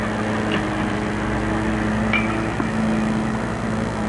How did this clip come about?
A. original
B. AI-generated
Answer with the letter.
A